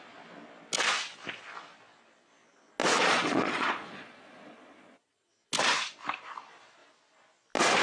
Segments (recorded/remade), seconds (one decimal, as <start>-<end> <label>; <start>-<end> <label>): 0.0-2.9 recorded; 2.9-5.3 remade; 5.3-7.8 recorded